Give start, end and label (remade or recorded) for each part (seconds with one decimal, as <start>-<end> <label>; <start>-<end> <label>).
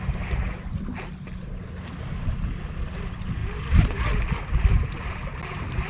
0.0-5.9 recorded